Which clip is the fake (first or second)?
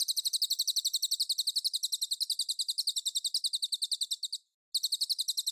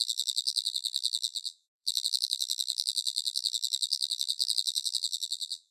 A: second